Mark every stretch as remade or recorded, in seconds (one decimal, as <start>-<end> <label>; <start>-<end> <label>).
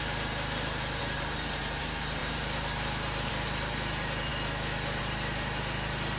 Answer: 0.0-4.3 remade; 4.3-5.0 recorded; 5.0-6.2 remade